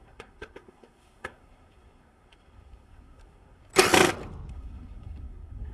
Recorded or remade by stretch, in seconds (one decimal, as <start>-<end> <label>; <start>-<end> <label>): 0.0-3.7 remade; 3.7-4.5 recorded; 4.5-5.7 remade